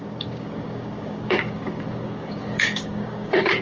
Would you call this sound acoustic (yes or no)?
no